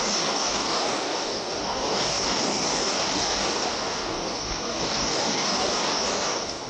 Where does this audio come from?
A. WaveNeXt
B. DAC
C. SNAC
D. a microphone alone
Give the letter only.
B